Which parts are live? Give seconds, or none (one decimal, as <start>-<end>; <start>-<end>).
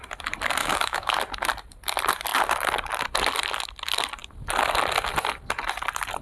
0.0-0.6; 1.2-6.2